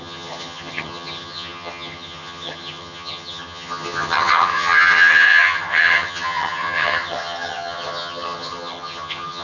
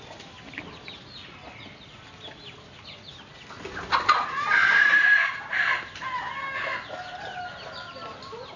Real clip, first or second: second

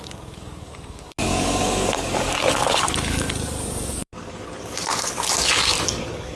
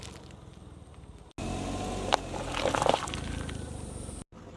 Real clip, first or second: second